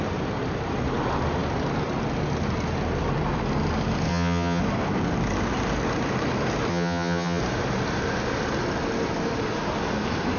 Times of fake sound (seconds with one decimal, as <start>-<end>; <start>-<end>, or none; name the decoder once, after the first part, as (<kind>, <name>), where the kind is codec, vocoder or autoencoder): 4.1-4.6 (vocoder, HiFi-GAN); 6.7-7.4